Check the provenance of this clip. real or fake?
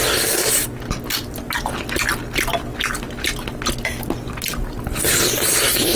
real